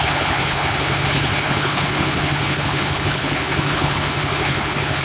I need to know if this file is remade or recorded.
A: remade